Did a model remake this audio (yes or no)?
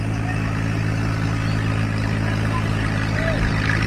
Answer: no